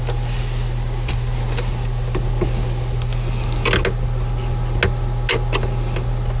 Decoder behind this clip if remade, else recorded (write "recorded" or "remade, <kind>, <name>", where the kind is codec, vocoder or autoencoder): recorded